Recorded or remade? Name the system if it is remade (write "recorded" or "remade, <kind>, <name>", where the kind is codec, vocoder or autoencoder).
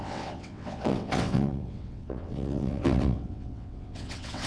remade, vocoder, WaveNeXt